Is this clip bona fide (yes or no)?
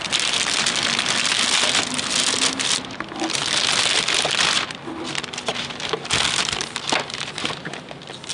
yes